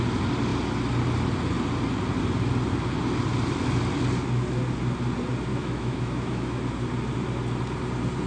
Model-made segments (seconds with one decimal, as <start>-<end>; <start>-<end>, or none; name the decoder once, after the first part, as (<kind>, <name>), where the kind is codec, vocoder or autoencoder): 5.5-6.6 (autoencoder, DAC-VAE)